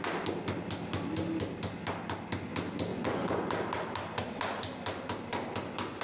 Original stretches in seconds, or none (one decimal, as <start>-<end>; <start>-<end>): 0.0-2.9; 3.5-6.0